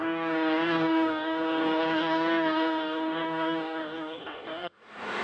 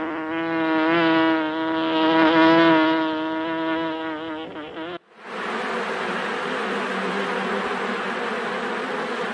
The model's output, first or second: first